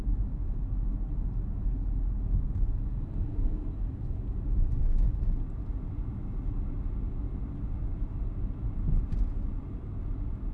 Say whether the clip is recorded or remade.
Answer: recorded